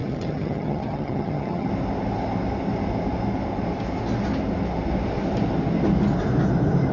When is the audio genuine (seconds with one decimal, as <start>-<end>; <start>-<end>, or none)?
1.7-6.9